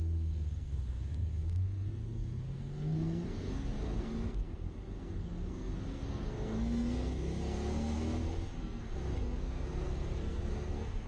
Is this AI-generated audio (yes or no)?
yes